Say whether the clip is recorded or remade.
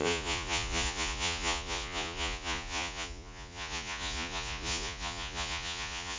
remade